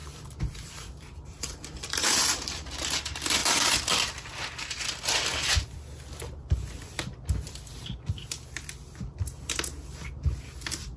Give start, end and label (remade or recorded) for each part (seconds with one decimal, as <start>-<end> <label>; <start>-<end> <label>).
0.0-2.8 remade; 2.8-11.0 recorded